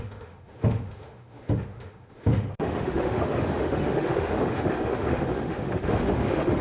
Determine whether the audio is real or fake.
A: fake